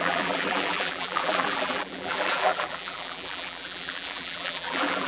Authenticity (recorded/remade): remade